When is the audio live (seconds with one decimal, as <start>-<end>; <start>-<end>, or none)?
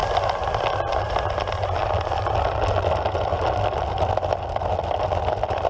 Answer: 0.0-5.7